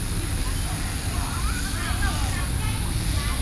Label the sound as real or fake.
real